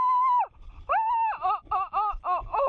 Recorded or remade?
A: recorded